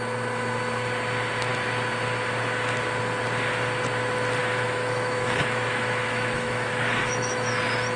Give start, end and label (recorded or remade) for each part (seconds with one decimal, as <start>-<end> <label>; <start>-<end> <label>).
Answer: 0.0-4.4 recorded; 4.4-7.6 remade; 7.6-8.0 recorded